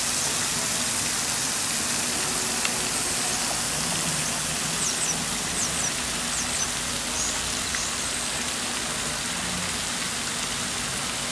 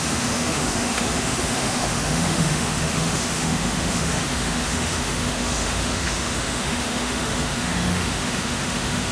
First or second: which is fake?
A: second